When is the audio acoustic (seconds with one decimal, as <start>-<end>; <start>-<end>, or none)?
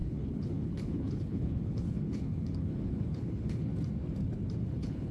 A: 3.7-4.6